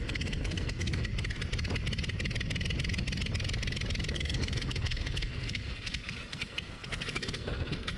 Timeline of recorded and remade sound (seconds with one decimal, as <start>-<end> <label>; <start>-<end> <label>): 0.0-1.1 remade; 1.1-4.1 recorded; 4.1-8.0 remade